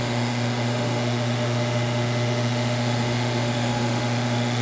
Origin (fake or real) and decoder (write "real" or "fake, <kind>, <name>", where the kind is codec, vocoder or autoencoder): fake, autoencoder, DAC-VAE